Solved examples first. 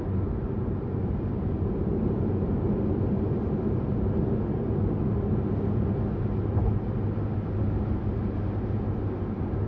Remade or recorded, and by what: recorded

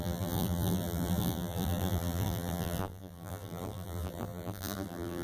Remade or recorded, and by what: remade, vocoder, BigVGAN v2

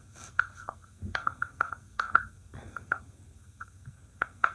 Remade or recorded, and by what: remade, codec, SNAC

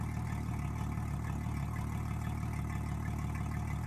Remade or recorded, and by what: recorded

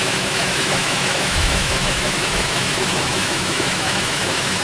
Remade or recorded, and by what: remade, autoencoder, DAC-VAE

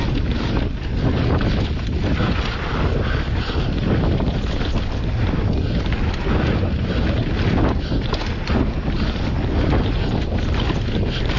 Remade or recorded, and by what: recorded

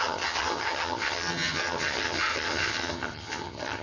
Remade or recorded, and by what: remade, vocoder, HiFi-GAN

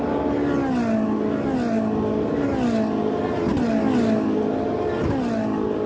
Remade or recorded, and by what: recorded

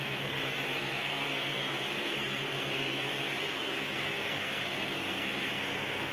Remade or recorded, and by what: remade, codec, SNAC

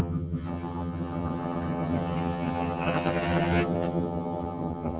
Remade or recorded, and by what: remade, vocoder, HiFi-GAN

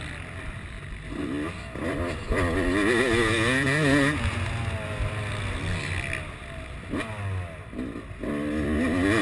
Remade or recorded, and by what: recorded